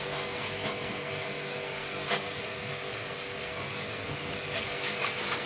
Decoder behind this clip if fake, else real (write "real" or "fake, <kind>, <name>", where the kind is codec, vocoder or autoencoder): fake, codec, SNAC